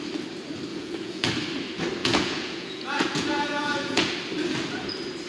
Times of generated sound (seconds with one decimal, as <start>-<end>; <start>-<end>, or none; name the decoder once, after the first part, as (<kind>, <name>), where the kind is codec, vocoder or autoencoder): 0.7-1.3 (vocoder, Vocos); 2.0-4.1